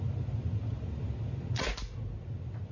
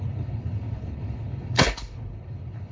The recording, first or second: first